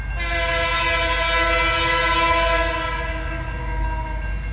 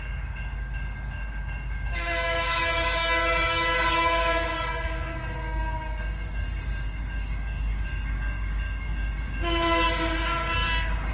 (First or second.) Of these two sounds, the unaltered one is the first